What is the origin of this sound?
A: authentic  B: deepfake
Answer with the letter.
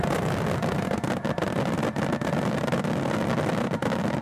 A